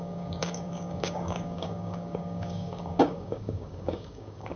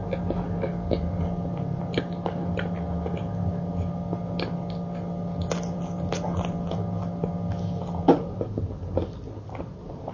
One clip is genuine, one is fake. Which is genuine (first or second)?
second